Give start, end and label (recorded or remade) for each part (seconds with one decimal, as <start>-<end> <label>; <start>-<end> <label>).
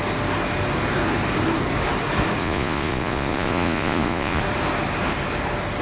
0.0-2.4 recorded; 2.4-4.4 remade; 4.4-5.8 recorded